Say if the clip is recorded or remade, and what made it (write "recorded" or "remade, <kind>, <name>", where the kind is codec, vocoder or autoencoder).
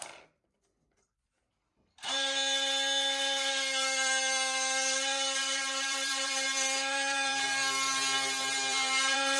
remade, vocoder, BigVGAN v2